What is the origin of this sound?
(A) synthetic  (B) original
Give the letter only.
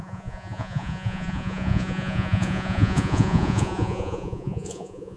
A